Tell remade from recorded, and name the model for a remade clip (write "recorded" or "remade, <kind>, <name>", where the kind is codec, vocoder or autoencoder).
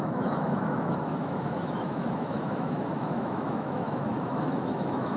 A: remade, autoencoder, DAC-VAE